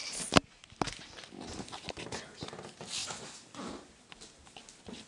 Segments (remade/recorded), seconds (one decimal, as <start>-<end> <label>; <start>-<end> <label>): 0.0-5.1 recorded